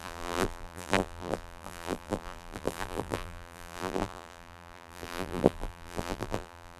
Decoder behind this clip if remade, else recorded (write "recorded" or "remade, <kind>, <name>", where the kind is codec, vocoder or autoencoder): remade, vocoder, BigVGAN v2